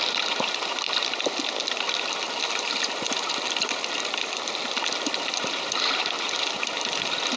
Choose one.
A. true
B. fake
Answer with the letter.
A